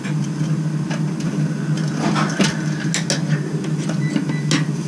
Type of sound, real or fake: real